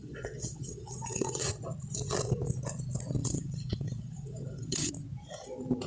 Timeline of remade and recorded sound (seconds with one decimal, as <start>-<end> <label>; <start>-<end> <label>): 0.0-1.6 remade; 1.6-3.2 recorded; 3.2-4.9 remade; 4.9-5.9 recorded